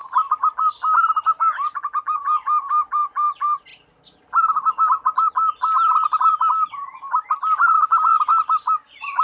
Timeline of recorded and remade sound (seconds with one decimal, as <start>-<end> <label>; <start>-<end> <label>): 0.0-9.2 recorded